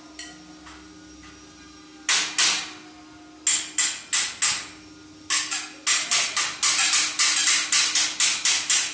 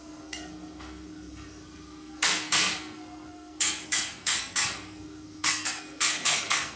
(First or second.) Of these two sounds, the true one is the first